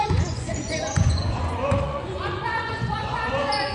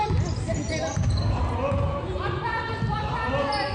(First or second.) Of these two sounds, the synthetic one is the first